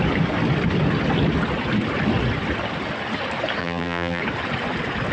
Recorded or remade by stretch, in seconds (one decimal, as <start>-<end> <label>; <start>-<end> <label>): 0.0-3.6 recorded; 3.6-4.2 remade; 4.2-5.1 recorded